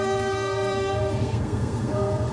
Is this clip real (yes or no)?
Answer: no